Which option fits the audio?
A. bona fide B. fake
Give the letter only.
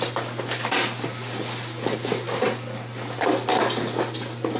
A